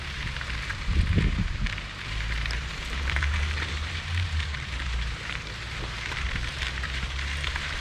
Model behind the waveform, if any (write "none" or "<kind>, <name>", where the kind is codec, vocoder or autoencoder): vocoder, BigVGAN v2